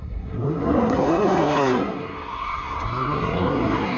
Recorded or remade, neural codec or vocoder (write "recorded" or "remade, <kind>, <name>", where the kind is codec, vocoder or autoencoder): remade, codec, SNAC